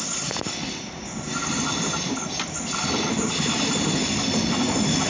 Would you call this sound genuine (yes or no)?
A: no